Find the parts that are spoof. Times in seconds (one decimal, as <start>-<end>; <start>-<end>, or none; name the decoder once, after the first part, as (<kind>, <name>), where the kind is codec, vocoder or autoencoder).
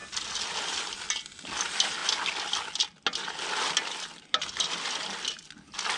none